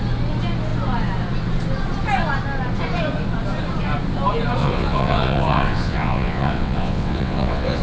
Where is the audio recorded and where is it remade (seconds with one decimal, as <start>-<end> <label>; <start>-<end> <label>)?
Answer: 0.0-4.6 recorded; 4.6-7.8 remade